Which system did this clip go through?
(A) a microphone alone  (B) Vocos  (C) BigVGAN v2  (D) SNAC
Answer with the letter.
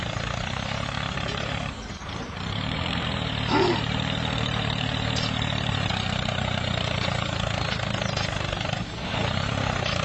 C